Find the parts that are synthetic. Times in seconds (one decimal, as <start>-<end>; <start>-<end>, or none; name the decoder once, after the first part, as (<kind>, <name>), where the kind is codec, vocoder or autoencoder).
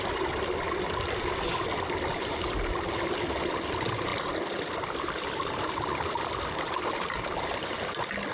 none